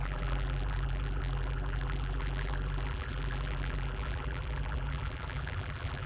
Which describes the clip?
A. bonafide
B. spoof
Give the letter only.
B